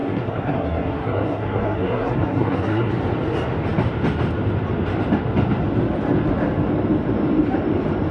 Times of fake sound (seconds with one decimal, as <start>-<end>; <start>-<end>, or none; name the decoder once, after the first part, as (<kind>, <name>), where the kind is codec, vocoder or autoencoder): 0.0-2.9 (codec, SNAC)